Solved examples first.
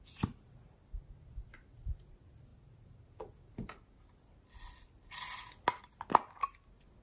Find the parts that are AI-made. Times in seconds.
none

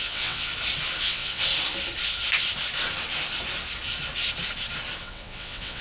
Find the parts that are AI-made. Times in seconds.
0.0-0.5 (vocoder, WaveNeXt); 1.0-1.5; 5.0-5.8